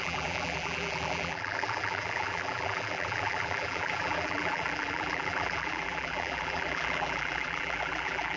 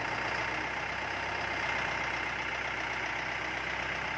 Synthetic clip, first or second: first